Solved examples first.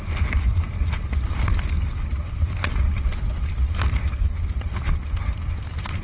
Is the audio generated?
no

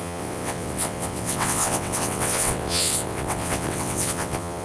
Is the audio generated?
yes